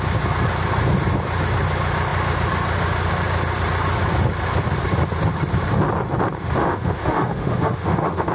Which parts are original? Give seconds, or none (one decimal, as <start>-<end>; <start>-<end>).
0.0-6.6